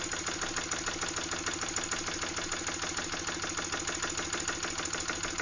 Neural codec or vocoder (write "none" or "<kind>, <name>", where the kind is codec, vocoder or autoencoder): none